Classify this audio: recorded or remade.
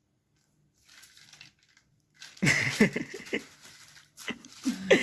recorded